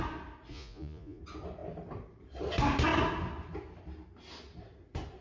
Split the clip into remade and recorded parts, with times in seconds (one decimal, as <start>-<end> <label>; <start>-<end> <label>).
0.0-0.5 recorded; 0.5-1.2 remade; 1.2-5.2 recorded